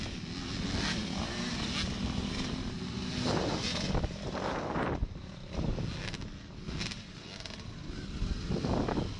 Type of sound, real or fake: real